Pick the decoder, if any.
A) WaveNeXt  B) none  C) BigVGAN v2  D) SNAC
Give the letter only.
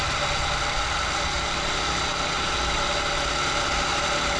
B